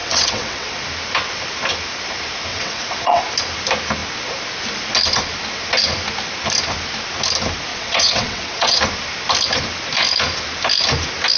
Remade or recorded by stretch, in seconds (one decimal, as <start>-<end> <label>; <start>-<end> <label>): 0.0-0.8 remade; 0.8-2.5 recorded; 2.5-3.2 remade; 3.2-7.7 recorded; 7.7-8.8 remade; 8.8-11.4 recorded